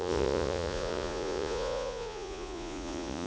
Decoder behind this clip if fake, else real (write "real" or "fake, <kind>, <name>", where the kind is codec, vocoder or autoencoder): fake, vocoder, Vocos